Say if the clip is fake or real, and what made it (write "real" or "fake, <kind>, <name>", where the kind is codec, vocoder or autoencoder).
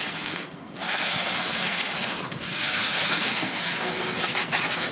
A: fake, codec, SNAC